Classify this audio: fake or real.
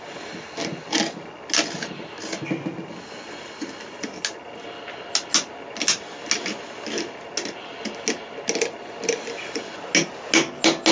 real